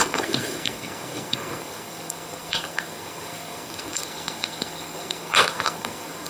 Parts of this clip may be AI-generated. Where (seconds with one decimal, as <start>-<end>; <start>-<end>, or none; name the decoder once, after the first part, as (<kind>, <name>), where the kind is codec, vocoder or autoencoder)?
0.0-6.3 (codec, SNAC)